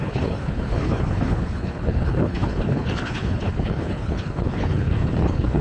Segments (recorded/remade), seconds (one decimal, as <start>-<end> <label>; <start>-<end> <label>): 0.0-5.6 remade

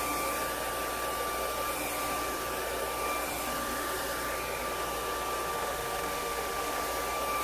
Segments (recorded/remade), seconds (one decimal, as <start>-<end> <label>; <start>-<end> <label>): 0.0-5.5 recorded; 5.5-6.8 remade; 6.8-7.4 recorded

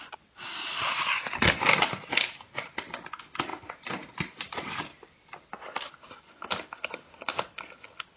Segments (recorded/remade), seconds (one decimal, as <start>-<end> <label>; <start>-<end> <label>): 0.0-8.2 recorded

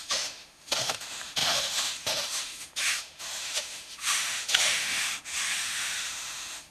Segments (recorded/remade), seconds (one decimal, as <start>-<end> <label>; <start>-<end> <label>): 0.0-6.7 remade